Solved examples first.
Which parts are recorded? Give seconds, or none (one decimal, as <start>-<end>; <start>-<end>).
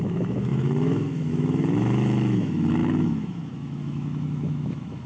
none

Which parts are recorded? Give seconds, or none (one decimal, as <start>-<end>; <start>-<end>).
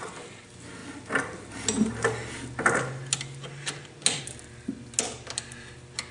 0.0-6.1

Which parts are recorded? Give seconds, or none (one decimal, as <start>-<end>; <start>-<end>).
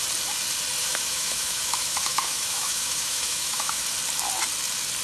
0.0-0.8; 3.8-5.0